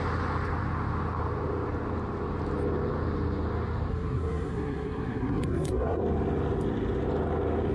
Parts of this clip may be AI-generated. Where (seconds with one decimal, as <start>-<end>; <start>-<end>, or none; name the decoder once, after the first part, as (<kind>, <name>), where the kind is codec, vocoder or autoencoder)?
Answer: 3.9-6.0 (codec, SNAC)